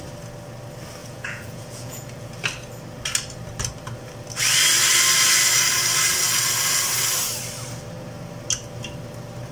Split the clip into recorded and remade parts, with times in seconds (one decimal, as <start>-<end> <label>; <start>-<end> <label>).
0.0-1.0 recorded; 1.0-2.3 remade; 2.3-9.5 recorded